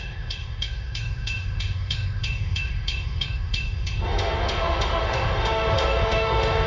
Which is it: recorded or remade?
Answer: remade